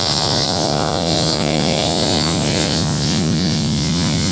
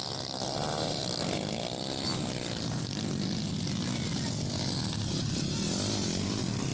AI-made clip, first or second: first